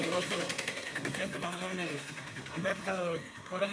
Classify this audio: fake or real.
fake